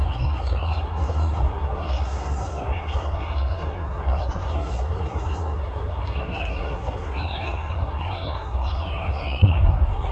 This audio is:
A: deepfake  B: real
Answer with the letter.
A